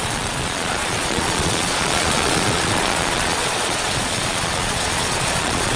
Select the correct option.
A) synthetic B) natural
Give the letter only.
A